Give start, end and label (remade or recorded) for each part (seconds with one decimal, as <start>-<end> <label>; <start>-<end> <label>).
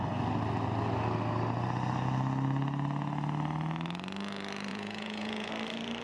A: 0.0-4.7 recorded; 4.7-5.5 remade; 5.5-6.0 recorded